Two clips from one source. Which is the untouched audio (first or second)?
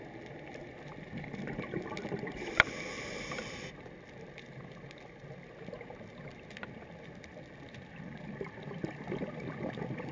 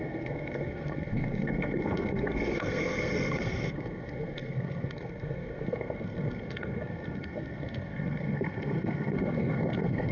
first